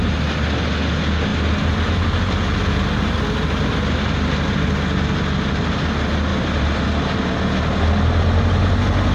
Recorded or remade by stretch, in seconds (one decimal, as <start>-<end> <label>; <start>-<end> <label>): 0.0-6.3 recorded; 6.3-6.8 remade; 6.8-9.1 recorded